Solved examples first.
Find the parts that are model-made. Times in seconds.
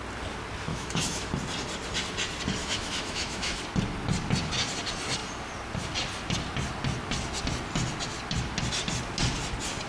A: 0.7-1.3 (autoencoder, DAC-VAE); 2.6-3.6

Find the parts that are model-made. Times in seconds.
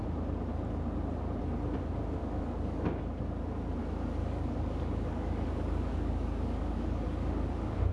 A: 2.2-3.0 (codec, DAC); 4.2-7.9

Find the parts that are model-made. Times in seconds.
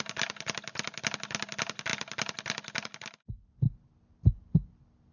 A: none